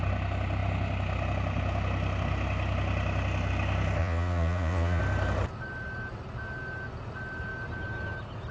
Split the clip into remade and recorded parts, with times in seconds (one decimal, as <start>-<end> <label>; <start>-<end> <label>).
0.0-4.0 recorded; 4.0-5.0 remade; 5.0-8.5 recorded